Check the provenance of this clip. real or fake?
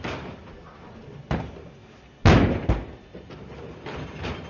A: real